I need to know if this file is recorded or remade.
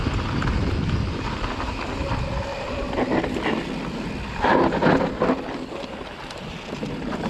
recorded